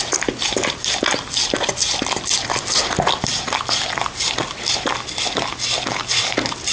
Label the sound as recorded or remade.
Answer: recorded